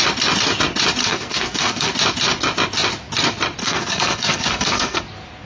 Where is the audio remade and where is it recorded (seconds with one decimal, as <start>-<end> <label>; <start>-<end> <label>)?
0.0-1.0 recorded; 1.0-1.9 remade; 1.9-3.6 recorded; 3.6-5.0 remade; 5.0-5.5 recorded